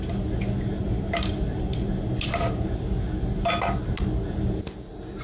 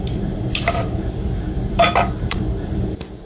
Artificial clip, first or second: second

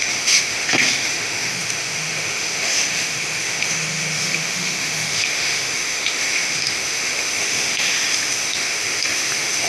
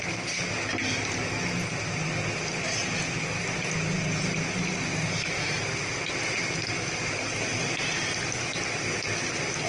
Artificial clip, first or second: first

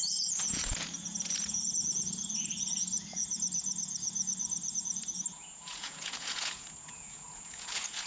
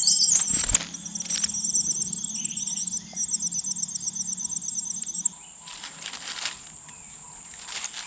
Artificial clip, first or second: first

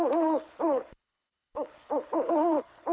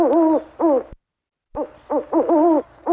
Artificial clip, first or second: first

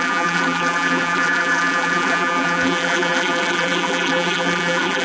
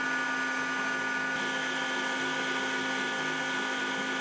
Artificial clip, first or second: first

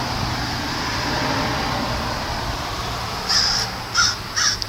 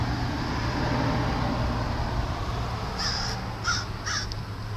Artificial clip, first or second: first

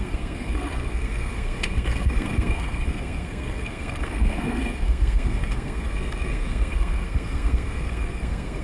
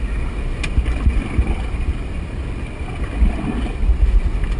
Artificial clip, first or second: first